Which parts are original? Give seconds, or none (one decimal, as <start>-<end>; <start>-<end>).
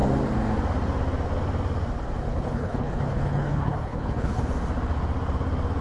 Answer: 0.0-2.3; 4.4-5.8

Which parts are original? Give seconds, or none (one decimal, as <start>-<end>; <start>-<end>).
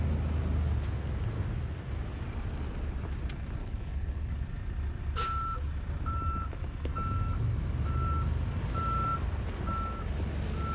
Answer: 0.0-3.6; 4.3-10.7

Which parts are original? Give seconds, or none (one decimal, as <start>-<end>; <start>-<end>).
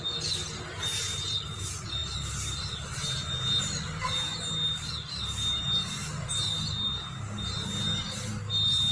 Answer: 0.0-8.9